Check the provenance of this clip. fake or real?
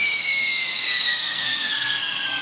fake